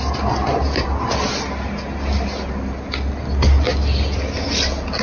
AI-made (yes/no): no